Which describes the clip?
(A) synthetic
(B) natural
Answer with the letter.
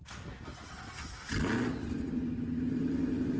B